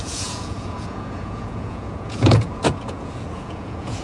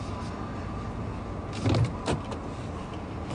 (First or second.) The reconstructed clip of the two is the first